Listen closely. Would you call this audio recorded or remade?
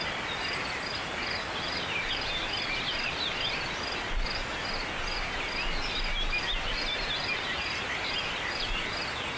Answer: recorded